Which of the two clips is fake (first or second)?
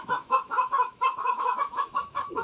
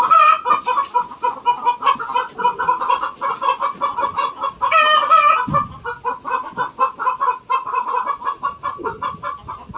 first